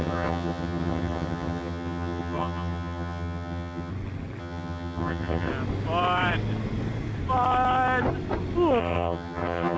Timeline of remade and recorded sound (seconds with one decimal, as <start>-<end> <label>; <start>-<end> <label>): 0.0-3.9 remade; 3.9-4.4 recorded; 4.4-5.5 remade; 5.5-8.8 recorded; 8.8-9.8 remade